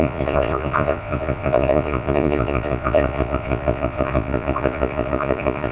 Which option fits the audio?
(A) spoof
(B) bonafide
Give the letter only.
A